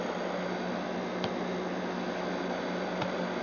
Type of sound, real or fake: real